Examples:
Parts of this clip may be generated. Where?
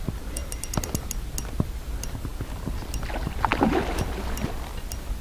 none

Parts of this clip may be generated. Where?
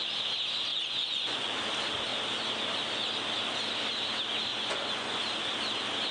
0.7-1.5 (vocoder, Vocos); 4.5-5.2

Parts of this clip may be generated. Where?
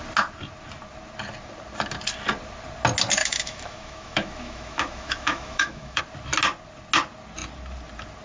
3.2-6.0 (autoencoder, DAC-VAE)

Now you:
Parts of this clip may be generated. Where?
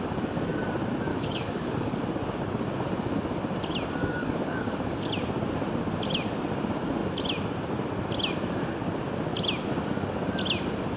1.1-2.0 (codec, DAC); 4.0-5.1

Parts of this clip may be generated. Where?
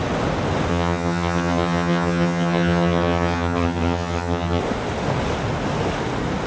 0.7-4.6 (vocoder, HiFi-GAN)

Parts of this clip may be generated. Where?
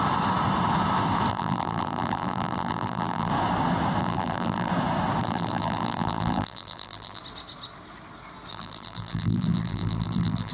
1.3-3.3 (vocoder, BigVGAN v2); 4.0-4.7; 5.2-7.2; 8.5-10.5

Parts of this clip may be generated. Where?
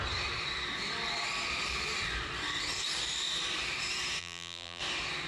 4.2-4.8 (vocoder, BigVGAN v2)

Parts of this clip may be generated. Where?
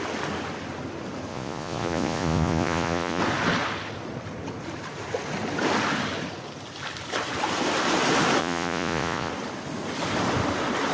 1.3-3.2 (vocoder, Vocos); 8.4-9.3